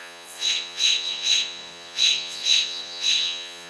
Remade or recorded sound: remade